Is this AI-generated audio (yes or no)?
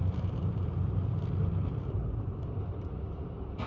yes